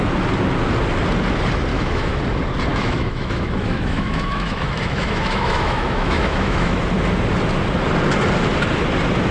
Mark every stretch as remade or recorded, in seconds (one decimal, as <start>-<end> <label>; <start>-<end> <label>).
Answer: 0.0-1.7 recorded; 1.7-2.2 remade; 2.2-2.7 recorded; 2.7-6.8 remade; 6.8-9.3 recorded